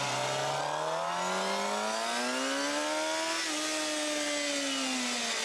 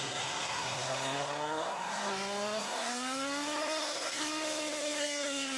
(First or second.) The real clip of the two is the first